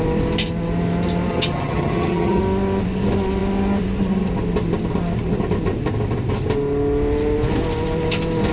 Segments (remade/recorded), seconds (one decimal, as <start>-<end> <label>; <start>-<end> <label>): 0.0-1.3 recorded; 1.3-2.4 remade; 2.4-8.5 recorded